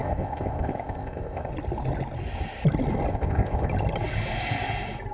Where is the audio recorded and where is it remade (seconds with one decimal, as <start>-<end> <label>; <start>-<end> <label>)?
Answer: 0.0-1.5 remade; 1.5-3.1 recorded; 3.1-3.7 remade; 3.7-5.1 recorded